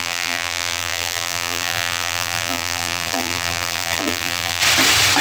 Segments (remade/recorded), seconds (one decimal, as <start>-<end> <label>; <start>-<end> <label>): 0.0-4.6 remade; 4.6-5.2 recorded